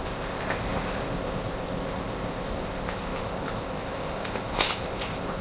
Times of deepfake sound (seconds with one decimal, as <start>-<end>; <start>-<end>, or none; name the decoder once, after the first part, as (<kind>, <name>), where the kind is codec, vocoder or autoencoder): 0.0-5.4 (codec, ZipCodec)